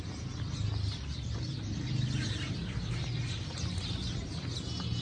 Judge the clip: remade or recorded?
recorded